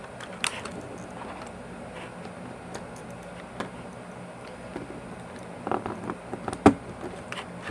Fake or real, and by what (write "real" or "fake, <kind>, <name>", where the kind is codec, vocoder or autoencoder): real